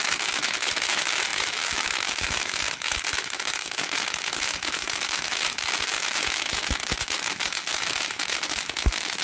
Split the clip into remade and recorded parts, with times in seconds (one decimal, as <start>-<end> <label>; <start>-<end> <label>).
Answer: 0.0-9.2 remade